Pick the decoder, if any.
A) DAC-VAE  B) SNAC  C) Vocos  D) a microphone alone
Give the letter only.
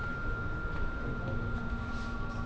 D